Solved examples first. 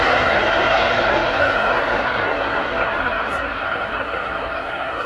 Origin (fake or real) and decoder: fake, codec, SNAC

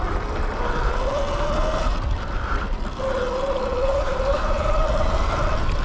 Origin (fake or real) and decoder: real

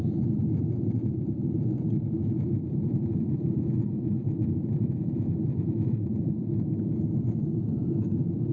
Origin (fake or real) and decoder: fake, vocoder, BigVGAN v2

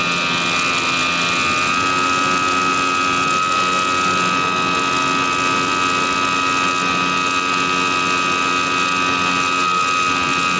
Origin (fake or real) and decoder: real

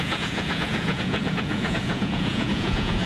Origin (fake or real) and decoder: fake, vocoder, Vocos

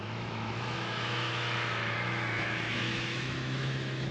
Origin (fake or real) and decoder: fake, autoencoder, DAC-VAE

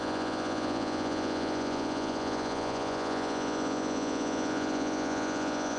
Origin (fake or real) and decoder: fake, vocoder, Vocos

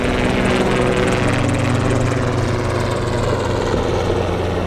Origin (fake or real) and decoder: real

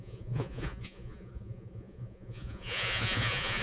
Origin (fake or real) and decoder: fake, vocoder, Vocos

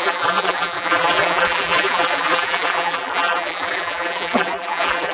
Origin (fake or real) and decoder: fake, vocoder, BigVGAN v2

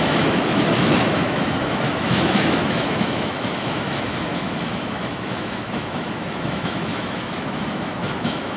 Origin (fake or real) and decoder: fake, autoencoder, DAC-VAE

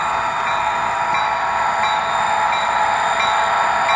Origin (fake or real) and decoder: real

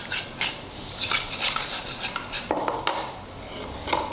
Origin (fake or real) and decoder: real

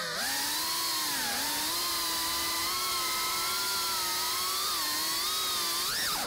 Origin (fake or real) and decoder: real